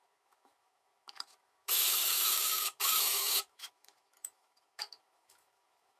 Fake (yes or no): yes